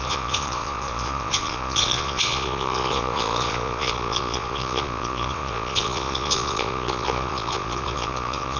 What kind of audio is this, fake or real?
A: fake